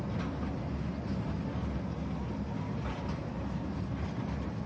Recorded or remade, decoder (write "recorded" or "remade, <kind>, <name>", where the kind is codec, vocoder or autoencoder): recorded